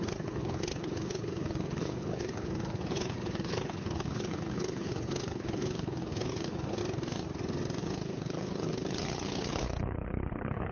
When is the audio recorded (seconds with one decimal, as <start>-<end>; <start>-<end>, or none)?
6.8-7.8